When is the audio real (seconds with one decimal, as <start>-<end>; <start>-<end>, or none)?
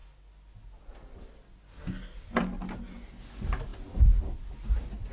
0.0-5.1